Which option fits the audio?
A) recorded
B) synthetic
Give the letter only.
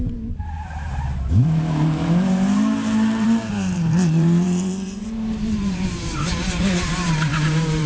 B